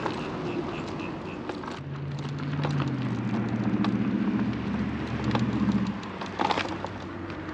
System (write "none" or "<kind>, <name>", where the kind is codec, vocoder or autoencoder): none